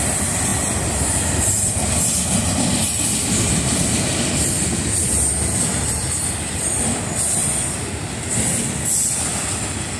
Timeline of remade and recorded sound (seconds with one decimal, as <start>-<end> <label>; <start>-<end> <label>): 0.0-7.4 recorded; 7.4-8.3 remade; 8.3-10.0 recorded